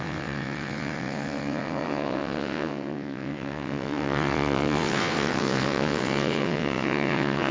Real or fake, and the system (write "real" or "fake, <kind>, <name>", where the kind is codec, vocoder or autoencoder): fake, vocoder, WaveNeXt